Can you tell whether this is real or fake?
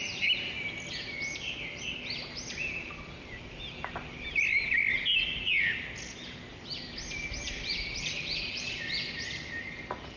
real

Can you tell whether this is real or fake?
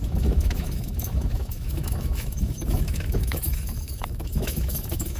fake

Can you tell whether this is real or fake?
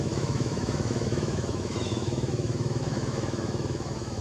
fake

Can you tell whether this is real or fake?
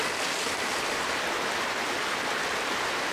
real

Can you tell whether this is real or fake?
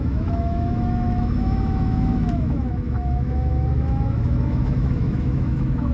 fake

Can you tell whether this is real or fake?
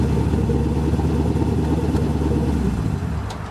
real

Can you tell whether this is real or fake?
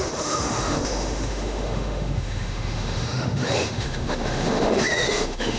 fake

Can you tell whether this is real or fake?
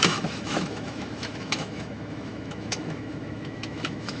fake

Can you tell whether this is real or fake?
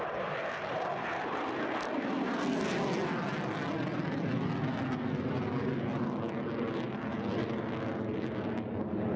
real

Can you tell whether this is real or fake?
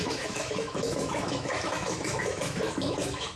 fake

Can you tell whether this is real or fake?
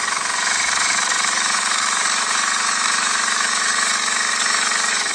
fake